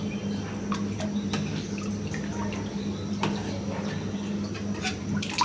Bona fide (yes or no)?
yes